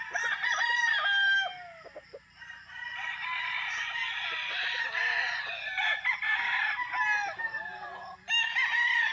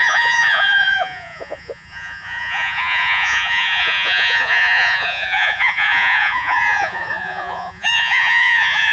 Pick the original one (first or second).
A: first